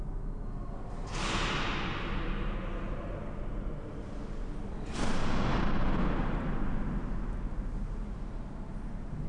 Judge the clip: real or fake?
real